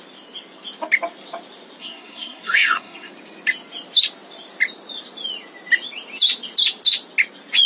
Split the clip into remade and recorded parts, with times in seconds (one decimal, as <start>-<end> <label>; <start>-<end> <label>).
0.0-1.8 recorded; 1.8-3.1 remade; 3.1-7.7 recorded